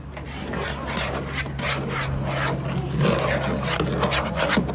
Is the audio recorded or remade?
recorded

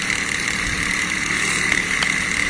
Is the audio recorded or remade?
recorded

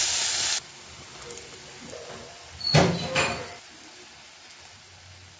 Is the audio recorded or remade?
recorded